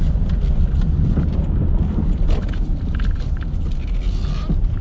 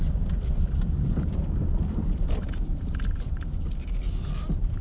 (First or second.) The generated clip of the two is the second